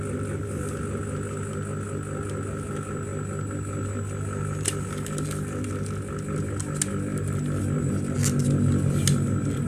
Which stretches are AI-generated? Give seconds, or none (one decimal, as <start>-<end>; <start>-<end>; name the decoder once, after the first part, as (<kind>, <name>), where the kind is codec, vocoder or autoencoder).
7.1-7.9 (vocoder, BigVGAN v2)